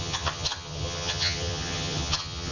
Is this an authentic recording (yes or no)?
no